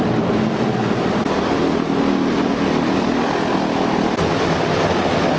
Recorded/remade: recorded